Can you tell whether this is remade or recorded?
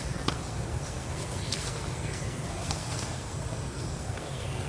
remade